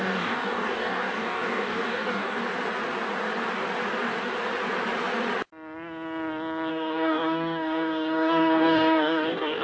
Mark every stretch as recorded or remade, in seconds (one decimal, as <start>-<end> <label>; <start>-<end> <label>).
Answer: 0.0-2.4 remade; 2.4-6.7 recorded; 6.7-9.6 remade